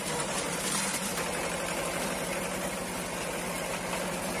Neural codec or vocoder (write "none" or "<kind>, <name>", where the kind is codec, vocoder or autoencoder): none